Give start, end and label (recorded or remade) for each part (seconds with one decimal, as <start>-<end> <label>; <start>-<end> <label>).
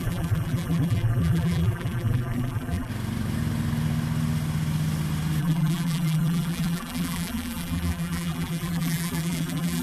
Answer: 0.0-2.9 remade; 2.9-5.4 recorded; 5.4-9.8 remade